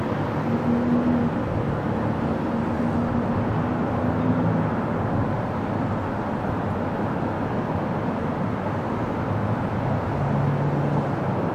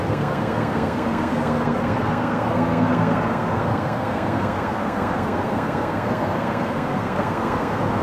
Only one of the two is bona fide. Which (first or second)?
first